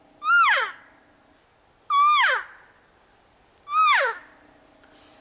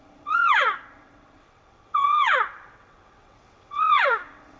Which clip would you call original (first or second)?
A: first